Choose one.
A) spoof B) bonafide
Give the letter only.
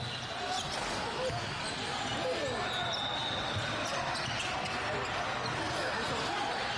B